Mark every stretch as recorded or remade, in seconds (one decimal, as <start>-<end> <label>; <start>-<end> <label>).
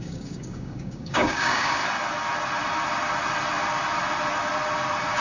0.0-1.8 remade; 1.8-5.2 recorded